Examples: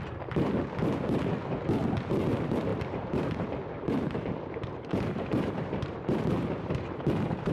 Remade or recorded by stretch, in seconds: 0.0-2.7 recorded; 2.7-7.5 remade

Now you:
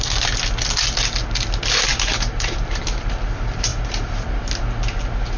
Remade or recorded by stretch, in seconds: 0.0-1.9 recorded; 1.9-2.8 remade; 2.8-3.7 recorded; 3.7-4.4 remade; 4.4-5.4 recorded

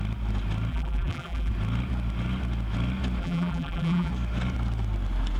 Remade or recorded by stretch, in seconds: 0.0-0.7 recorded; 0.7-1.5 remade; 1.5-3.2 recorded; 3.2-4.1 remade; 4.1-5.4 recorded

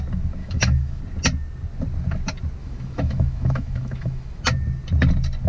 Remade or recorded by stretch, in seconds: 0.0-0.4 recorded; 0.4-1.0 remade; 1.0-2.6 recorded; 2.6-4.4 remade; 4.4-5.5 recorded

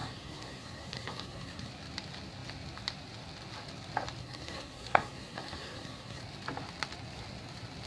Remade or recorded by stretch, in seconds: 0.0-1.7 remade; 1.7-4.2 recorded; 4.2-6.2 remade; 6.2-7.9 recorded

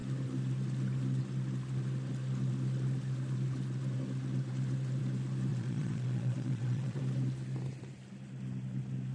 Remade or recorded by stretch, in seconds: 0.0-5.5 recorded; 5.5-7.0 remade; 7.0-9.1 recorded

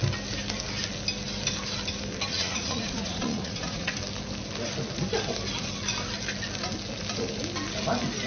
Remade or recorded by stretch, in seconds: 0.0-2.3 recorded; 2.3-3.9 remade; 3.9-8.3 recorded

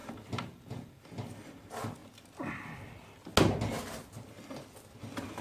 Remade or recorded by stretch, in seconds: 0.0-1.0 remade; 1.0-5.4 recorded